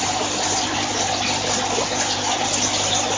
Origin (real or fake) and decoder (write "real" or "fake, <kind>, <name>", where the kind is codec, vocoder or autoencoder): real